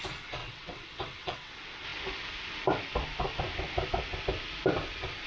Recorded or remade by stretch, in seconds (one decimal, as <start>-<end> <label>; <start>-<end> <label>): 0.0-0.4 recorded; 0.4-1.5 remade; 1.5-5.3 recorded